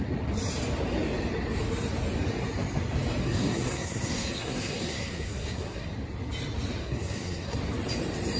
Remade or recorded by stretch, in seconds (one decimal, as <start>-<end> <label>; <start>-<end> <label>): 0.0-3.2 recorded; 3.2-5.9 remade; 5.9-6.8 recorded; 6.8-7.6 remade; 7.6-8.4 recorded